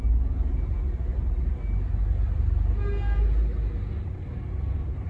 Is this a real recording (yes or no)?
yes